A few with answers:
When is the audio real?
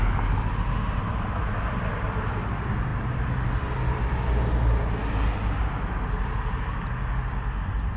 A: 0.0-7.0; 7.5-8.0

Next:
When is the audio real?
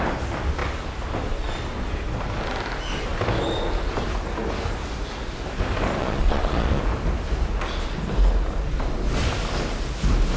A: 0.0-6.0; 6.8-10.4